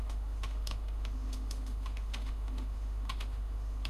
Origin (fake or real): fake